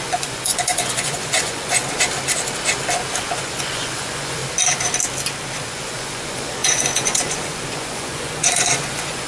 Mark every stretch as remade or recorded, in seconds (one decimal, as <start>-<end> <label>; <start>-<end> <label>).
0.0-1.8 remade; 1.8-3.2 recorded; 3.2-4.4 remade; 4.4-5.6 recorded; 5.6-9.3 remade